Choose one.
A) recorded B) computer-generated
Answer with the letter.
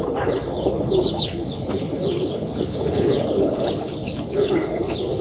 B